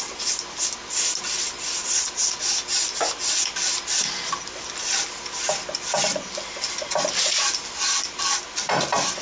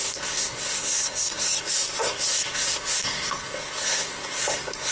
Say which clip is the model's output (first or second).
second